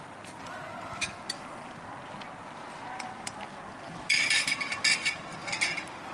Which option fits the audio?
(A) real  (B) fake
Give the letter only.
A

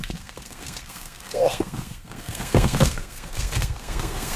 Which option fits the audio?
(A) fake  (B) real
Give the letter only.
A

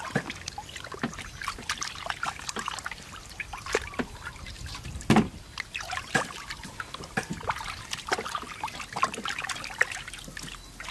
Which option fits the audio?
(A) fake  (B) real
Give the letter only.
B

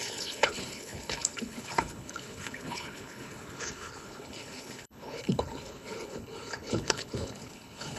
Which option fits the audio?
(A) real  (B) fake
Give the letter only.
B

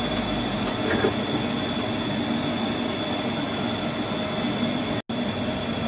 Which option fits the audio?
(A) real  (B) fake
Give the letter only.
A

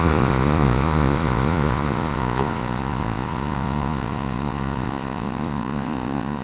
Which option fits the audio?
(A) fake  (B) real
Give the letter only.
A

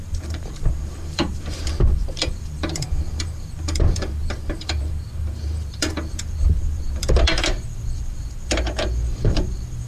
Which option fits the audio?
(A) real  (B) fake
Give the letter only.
B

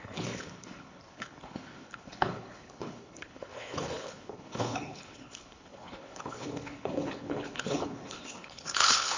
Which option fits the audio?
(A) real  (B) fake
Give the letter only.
B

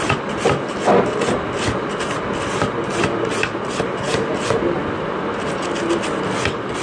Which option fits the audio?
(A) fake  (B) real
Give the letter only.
B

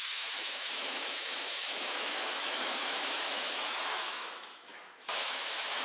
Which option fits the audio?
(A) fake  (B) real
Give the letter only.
A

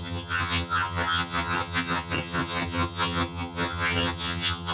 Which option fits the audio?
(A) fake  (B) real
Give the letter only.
A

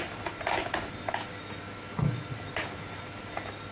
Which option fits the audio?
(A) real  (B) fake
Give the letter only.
A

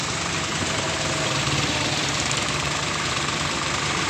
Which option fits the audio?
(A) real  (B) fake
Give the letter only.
B